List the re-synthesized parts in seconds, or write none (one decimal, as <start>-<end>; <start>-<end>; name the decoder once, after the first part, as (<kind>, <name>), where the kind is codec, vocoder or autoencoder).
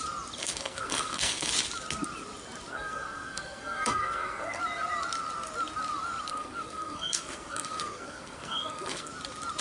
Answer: 0.4-1.5 (codec, SNAC); 2.7-4.6; 6.3-9.1